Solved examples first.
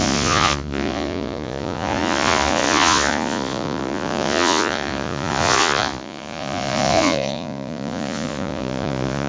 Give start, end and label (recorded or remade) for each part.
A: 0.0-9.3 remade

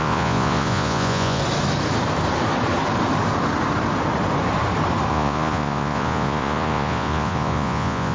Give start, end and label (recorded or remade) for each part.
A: 0.0-1.4 remade; 1.4-5.1 recorded; 5.1-8.1 remade

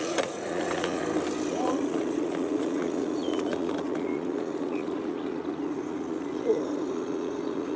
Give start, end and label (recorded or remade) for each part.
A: 0.0-1.0 remade; 1.0-1.5 recorded; 1.5-7.8 remade

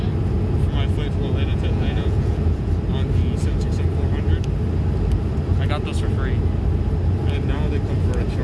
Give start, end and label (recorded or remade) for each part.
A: 0.0-1.5 recorded; 1.5-2.7 remade; 2.7-8.4 recorded

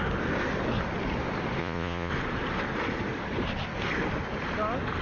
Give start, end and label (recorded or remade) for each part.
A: 0.0-1.6 recorded; 1.6-2.1 remade; 2.1-5.0 recorded

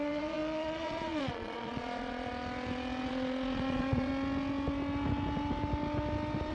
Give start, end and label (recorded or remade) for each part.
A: 0.0-2.3 remade; 2.3-3.1 recorded; 3.1-4.1 remade; 4.1-6.5 recorded

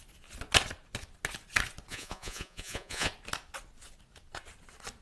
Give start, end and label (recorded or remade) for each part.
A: 0.0-1.9 recorded; 1.9-3.1 remade; 3.1-5.0 recorded

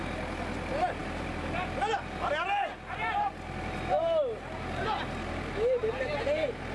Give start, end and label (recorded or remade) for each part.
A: 0.0-6.7 recorded